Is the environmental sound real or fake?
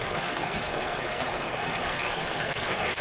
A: fake